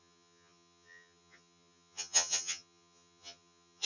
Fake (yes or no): yes